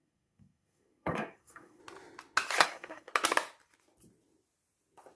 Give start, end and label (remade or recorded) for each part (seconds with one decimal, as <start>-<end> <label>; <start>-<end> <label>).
0.0-1.8 remade; 1.8-2.6 recorded; 2.6-3.1 remade; 3.1-5.2 recorded